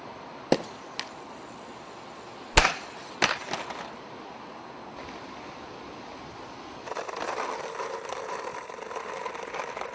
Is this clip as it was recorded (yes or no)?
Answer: yes